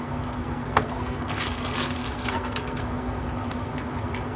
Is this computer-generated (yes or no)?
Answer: yes